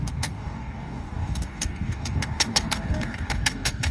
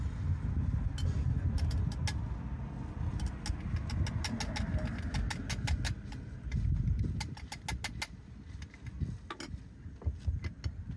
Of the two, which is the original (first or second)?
second